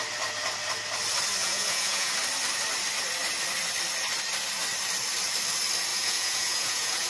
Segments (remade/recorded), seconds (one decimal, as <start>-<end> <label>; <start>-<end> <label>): 0.0-1.4 recorded; 1.4-2.1 remade; 2.1-5.9 recorded; 5.9-7.1 remade